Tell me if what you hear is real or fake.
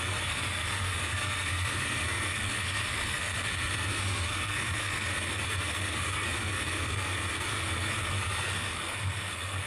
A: fake